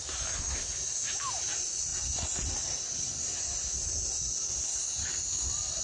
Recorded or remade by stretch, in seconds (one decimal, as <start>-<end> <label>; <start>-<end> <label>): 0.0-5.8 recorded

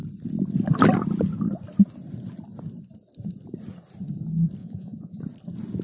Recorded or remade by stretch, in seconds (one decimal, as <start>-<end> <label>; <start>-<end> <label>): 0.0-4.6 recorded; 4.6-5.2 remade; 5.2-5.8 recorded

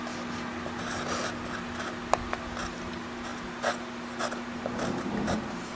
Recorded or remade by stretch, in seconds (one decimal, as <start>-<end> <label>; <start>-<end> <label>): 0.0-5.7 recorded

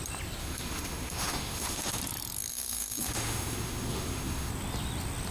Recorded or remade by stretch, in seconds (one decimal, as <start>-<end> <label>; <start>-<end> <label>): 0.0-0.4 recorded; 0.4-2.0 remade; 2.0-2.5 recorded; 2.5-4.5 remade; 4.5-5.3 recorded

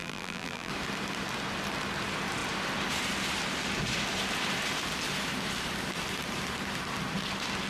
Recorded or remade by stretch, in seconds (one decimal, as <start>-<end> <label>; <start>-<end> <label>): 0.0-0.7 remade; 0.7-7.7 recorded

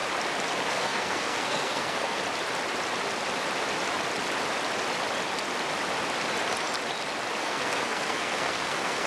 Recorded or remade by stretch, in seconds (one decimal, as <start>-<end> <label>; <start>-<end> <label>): 0.0-0.7 recorded; 0.7-2.2 remade; 2.2-7.4 recorded; 7.4-9.1 remade

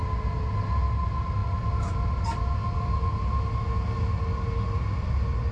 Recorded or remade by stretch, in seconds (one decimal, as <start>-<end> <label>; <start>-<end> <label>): 0.0-1.4 recorded; 1.4-2.8 remade; 2.8-5.5 recorded

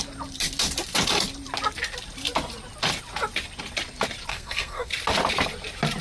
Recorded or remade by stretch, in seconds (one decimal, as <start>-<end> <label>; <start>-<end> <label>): 0.0-4.3 recorded; 4.3-4.9 remade; 4.9-6.0 recorded